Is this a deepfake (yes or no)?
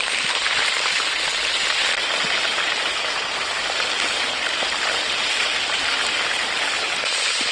yes